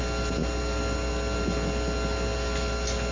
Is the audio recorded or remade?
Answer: recorded